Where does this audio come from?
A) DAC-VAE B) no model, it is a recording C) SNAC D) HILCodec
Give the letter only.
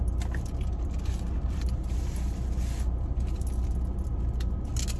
B